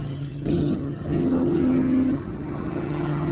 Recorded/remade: remade